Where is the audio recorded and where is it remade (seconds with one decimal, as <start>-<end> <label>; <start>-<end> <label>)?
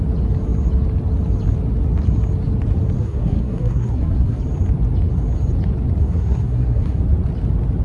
0.0-3.0 recorded; 3.0-4.4 remade; 4.4-6.0 recorded; 6.0-7.0 remade; 7.0-7.8 recorded